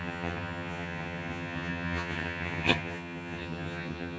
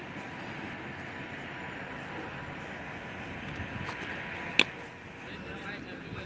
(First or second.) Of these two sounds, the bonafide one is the second